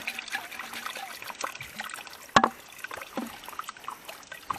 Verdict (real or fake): real